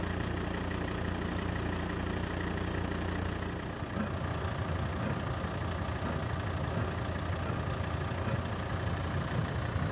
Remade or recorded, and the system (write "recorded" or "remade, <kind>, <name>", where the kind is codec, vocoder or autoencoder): recorded